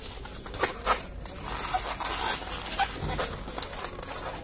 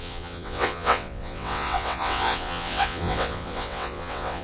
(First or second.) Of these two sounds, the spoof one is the second